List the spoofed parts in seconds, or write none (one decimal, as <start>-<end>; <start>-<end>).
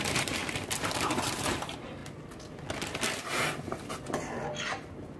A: 0.0-2.0; 4.6-5.2